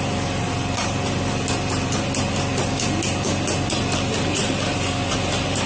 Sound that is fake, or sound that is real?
real